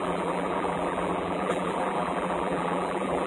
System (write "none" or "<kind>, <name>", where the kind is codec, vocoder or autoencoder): vocoder, BigVGAN v2